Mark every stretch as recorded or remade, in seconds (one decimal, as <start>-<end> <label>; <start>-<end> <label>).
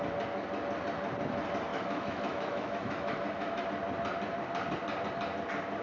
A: 0.0-1.7 recorded; 1.7-3.6 remade; 3.6-5.8 recorded